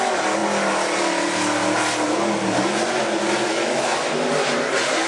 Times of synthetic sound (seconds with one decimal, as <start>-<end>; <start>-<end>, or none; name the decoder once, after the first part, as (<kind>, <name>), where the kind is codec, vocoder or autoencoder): 3.5-4.1 (autoencoder, DAC-VAE)